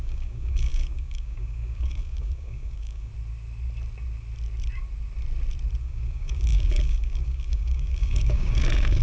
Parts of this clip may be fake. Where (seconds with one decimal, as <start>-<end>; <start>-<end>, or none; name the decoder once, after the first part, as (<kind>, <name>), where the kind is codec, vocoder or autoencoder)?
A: 0.0-3.1 (codec, DAC); 5.8-9.0